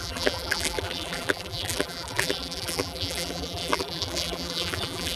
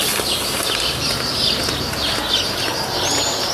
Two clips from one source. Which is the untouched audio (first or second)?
second